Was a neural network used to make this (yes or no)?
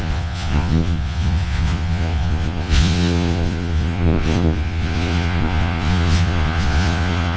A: yes